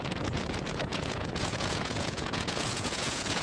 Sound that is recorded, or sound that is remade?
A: remade